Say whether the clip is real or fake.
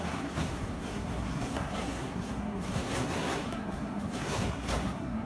fake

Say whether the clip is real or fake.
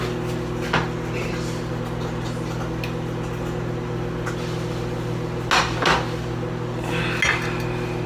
real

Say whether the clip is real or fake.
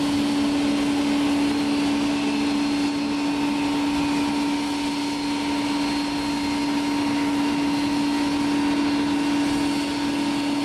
real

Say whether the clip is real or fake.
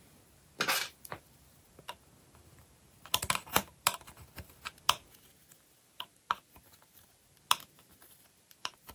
fake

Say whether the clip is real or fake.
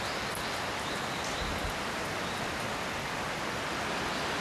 real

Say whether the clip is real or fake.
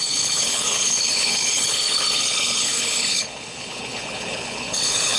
fake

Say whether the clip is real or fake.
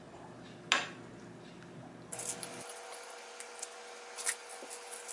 real